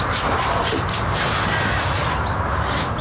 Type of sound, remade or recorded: recorded